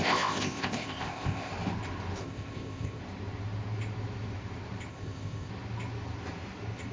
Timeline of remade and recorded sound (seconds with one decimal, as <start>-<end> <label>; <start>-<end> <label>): 0.0-1.5 remade; 1.5-2.2 recorded; 2.2-3.0 remade; 3.0-4.9 recorded; 4.9-5.5 remade; 5.5-6.9 recorded